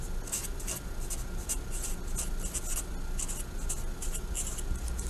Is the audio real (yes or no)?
yes